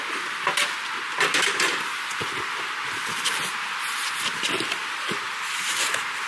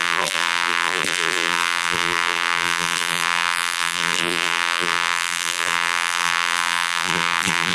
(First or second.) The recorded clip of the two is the first